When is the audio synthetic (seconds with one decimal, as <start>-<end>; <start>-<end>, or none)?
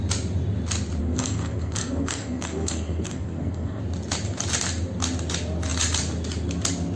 1.0-3.8